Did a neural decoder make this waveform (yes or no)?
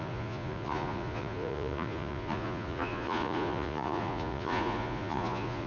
yes